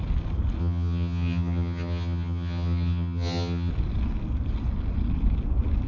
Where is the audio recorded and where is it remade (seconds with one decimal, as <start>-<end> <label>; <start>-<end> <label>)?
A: 0.0-0.6 recorded; 0.6-3.7 remade; 3.7-5.9 recorded